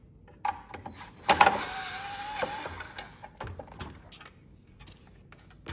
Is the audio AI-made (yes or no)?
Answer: no